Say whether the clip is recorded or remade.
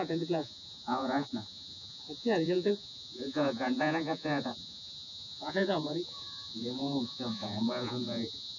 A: remade